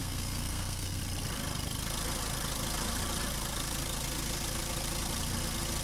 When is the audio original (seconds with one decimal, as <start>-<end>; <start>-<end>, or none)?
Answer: 1.0-5.8